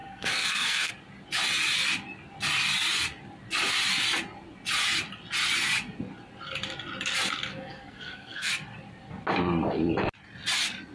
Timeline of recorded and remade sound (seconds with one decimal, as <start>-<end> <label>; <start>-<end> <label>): 0.0-0.9 remade; 0.9-7.5 recorded; 7.5-8.5 remade; 8.5-10.9 recorded